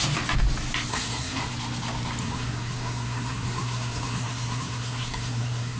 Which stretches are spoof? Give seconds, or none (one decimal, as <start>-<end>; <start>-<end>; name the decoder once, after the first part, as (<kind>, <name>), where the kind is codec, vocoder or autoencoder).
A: 0.9-1.5 (codec, SNAC); 2.2-5.8